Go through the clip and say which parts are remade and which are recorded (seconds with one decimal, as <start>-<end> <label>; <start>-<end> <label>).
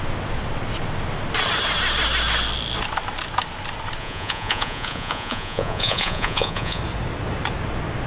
0.0-4.0 recorded; 4.0-6.8 remade; 6.8-8.1 recorded